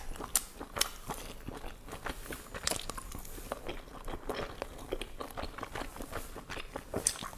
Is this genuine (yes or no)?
yes